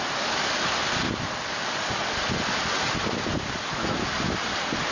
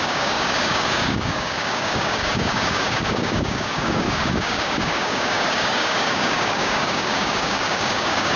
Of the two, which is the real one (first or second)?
first